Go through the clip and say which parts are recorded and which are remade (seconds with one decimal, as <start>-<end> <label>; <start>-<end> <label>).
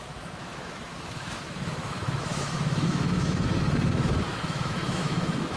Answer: 0.0-5.6 remade